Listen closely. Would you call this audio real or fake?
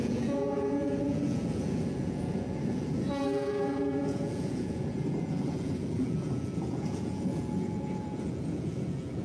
fake